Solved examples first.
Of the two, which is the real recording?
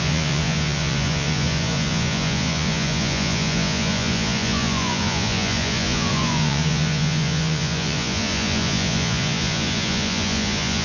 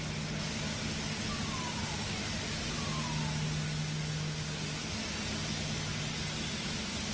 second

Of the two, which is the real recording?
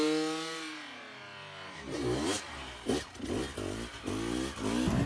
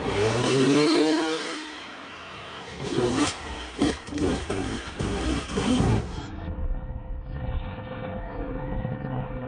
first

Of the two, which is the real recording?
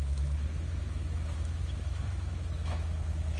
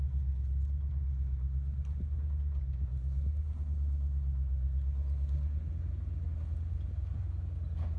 second